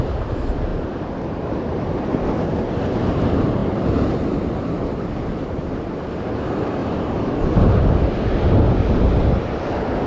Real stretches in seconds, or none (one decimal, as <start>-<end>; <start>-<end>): 0.0-0.7; 2.1-3.6; 5.9-6.8; 7.8-10.1